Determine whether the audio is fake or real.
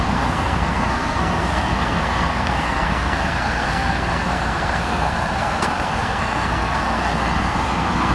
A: fake